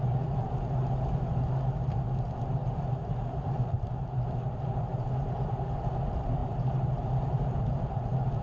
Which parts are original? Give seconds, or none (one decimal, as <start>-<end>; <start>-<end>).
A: 0.0-2.6; 3.7-4.9; 5.9-6.4; 8.0-8.4